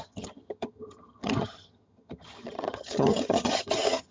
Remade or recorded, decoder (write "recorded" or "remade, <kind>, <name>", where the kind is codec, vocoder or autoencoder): remade, vocoder, HiFi-GAN